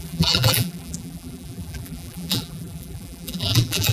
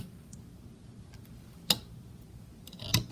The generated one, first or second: first